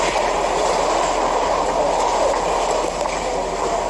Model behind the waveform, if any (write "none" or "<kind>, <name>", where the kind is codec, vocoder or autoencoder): none